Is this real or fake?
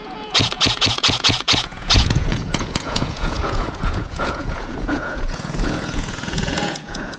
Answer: fake